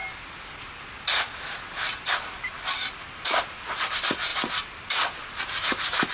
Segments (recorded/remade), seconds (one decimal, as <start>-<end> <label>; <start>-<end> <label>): 0.0-4.3 recorded; 4.3-5.4 remade; 5.4-6.1 recorded